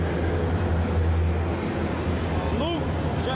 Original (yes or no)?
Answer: yes